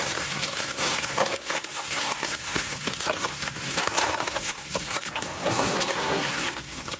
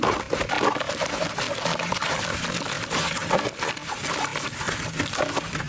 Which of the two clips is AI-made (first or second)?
first